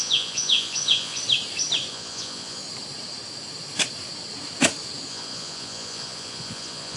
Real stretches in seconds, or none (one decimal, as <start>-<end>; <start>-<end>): 1.2-1.9; 2.6-5.1